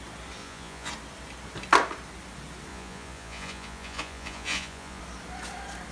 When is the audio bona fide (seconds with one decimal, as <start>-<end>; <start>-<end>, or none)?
0.0-0.4; 0.9-2.7; 5.0-5.9